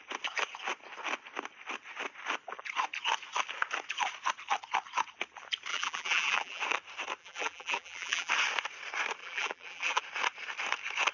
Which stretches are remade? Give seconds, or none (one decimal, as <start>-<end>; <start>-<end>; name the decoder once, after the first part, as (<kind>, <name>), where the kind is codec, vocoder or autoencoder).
5.7-6.6 (vocoder, BigVGAN v2); 7.2-8.3; 9.2-10.0

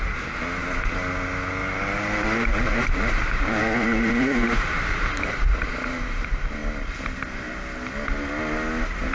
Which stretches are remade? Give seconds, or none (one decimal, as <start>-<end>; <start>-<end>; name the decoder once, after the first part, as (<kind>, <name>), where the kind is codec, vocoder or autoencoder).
1.6-5.7 (vocoder, BigVGAN v2)